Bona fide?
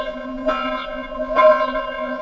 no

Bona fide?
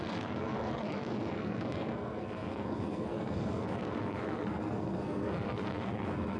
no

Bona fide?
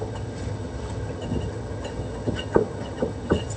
no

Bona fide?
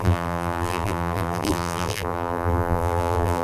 no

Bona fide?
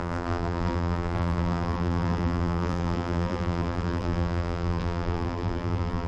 no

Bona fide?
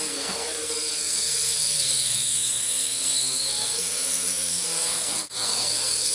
no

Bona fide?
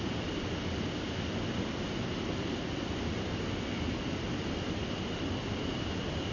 yes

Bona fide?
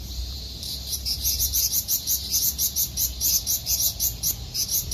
no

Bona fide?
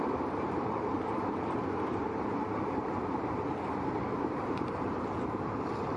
no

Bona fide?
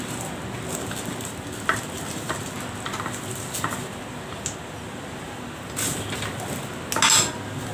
yes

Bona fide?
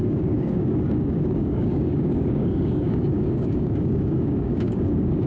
no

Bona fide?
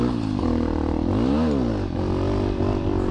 yes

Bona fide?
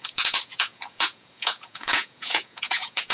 no